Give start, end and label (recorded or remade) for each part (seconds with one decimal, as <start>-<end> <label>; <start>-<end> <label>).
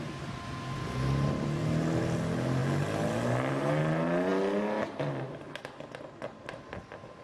0.0-7.2 recorded